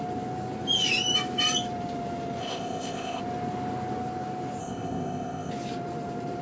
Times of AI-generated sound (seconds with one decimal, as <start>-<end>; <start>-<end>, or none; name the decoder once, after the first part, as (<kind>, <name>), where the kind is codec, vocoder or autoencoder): 2.4-3.2 (codec, ZipCodec); 4.6-5.5